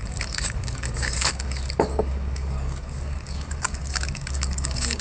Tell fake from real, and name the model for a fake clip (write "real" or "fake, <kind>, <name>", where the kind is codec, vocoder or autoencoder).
fake, codec, DAC